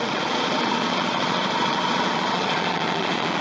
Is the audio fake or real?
fake